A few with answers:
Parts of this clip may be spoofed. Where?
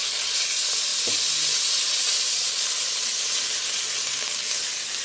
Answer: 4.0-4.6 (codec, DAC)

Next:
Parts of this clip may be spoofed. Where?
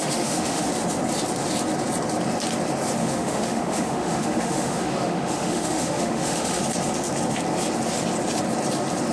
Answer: 0.0-0.7 (autoencoder, DAC-VAE); 3.0-6.6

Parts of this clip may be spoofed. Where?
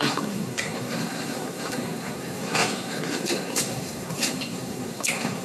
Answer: 0.0-5.4 (codec, SNAC)